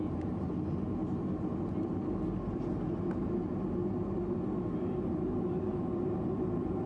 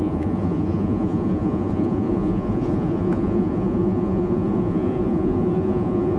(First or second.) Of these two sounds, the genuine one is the first